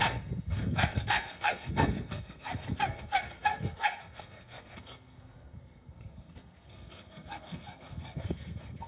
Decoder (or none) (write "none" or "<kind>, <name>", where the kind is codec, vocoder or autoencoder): codec, SNAC